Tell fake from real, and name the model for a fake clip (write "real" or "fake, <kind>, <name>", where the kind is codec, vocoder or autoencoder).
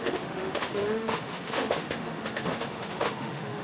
fake, autoencoder, DAC-VAE